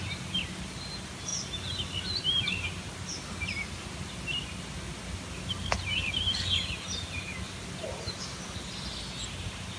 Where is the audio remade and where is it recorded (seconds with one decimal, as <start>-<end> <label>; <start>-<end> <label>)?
0.0-9.8 recorded